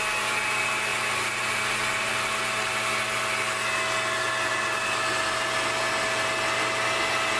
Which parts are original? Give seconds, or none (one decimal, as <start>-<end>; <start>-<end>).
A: 0.0-7.4